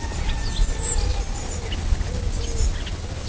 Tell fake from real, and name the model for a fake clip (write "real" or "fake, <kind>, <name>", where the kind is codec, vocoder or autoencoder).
real